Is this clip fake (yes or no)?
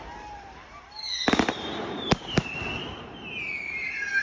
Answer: yes